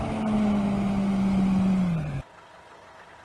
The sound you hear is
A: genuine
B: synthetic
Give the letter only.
A